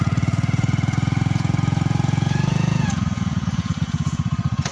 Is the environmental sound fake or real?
fake